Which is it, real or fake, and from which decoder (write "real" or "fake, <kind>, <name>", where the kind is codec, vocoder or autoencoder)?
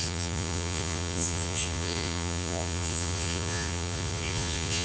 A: fake, vocoder, Vocos